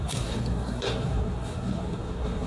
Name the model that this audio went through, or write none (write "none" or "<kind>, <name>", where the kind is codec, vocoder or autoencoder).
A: codec, SNAC